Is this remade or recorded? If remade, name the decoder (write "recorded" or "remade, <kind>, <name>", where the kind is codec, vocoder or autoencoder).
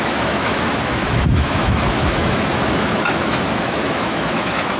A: remade, autoencoder, DAC-VAE